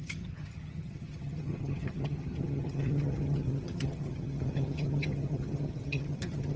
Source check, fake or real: fake